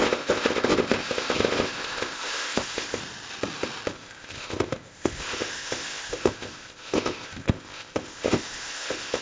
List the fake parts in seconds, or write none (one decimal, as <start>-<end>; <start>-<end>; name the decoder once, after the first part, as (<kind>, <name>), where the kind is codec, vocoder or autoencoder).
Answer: 0.0-3.0 (codec, ZipCodec); 3.9-9.2